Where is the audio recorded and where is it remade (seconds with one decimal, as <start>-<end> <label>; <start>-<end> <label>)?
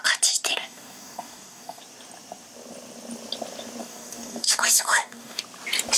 0.0-0.5 recorded; 0.5-1.8 remade; 1.8-3.8 recorded; 3.8-5.4 remade; 5.4-6.0 recorded